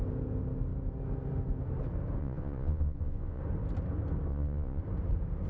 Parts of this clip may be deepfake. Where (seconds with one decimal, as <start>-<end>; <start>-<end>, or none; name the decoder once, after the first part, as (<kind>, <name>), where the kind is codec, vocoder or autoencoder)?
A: 2.2-3.4 (vocoder, Vocos); 4.3-4.8